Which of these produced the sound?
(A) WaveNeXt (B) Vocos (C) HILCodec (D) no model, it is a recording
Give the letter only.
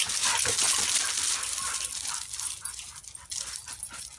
D